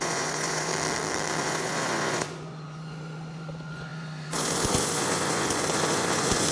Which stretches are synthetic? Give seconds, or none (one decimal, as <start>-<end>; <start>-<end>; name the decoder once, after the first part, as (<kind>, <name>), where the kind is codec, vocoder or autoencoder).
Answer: 0.0-0.7 (vocoder, Vocos); 1.4-6.5